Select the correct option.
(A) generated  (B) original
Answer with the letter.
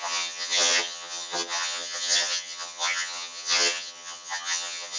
A